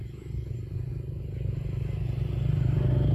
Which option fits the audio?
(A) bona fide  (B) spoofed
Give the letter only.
A